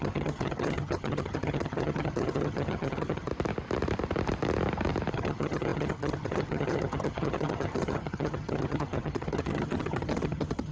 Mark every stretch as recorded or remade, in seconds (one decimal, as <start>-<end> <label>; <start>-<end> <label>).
0.0-3.3 remade; 3.3-5.1 recorded; 5.1-10.7 remade